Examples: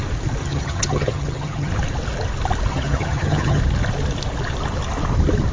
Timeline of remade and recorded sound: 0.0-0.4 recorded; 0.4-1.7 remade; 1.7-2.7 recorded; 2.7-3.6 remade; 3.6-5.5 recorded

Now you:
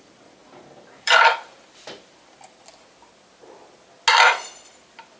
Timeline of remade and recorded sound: 0.0-2.6 remade; 2.6-4.7 recorded; 4.7-5.2 remade

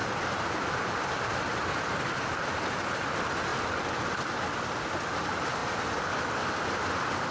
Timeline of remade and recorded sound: 0.0-0.7 remade; 0.7-5.6 recorded; 5.6-7.3 remade

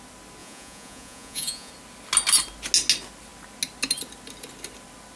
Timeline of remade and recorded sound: 0.0-0.4 recorded; 0.4-1.7 remade; 1.7-5.2 recorded